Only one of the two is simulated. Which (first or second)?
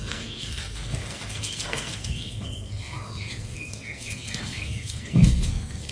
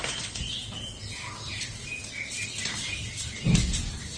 first